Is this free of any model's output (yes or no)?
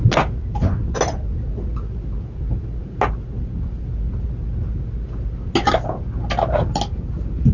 yes